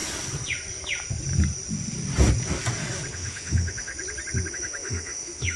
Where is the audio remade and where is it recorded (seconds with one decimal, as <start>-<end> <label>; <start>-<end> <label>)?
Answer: 0.0-3.1 recorded; 3.1-3.9 remade; 3.9-4.5 recorded; 4.5-5.6 remade